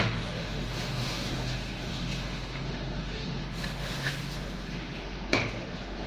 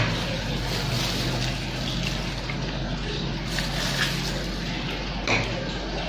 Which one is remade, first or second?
first